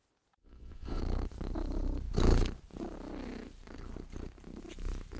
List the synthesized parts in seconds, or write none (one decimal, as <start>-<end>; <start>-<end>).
0.4-1.0